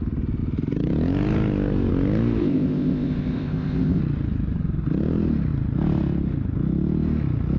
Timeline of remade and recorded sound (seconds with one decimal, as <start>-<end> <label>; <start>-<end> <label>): 0.0-2.4 recorded; 2.4-4.0 remade; 4.0-7.6 recorded